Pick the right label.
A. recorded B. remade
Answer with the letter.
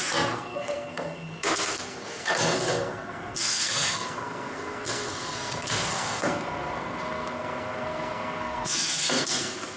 B